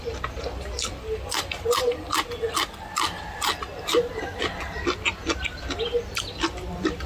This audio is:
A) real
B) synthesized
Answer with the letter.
B